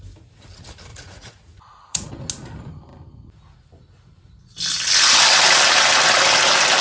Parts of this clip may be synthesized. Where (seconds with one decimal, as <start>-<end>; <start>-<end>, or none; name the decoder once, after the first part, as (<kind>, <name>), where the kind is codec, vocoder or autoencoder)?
0.9-2.1 (vocoder, Vocos)

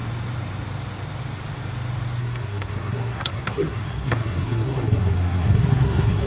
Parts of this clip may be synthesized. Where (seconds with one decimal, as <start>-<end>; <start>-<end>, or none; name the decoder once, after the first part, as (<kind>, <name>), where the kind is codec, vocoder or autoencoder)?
2.2-6.3 (codec, SNAC)

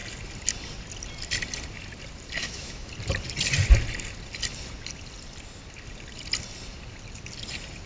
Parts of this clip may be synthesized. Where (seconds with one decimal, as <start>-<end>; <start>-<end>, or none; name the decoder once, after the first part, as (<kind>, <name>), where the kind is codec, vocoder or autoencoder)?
2.4-2.9 (autoencoder, DAC-VAE)